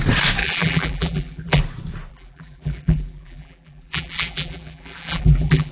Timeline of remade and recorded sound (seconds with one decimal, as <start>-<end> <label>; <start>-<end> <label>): 0.0-0.4 recorded; 0.4-1.6 remade; 1.6-2.1 recorded; 2.1-5.7 remade